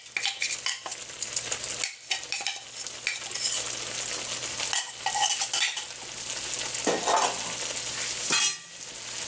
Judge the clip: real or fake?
real